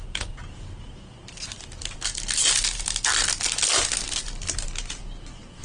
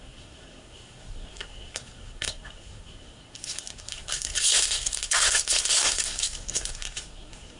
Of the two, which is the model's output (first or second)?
second